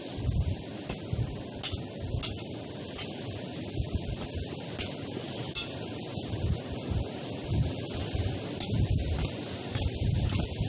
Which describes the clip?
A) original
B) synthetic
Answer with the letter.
A